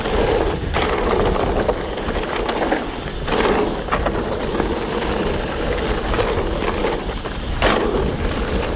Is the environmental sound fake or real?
real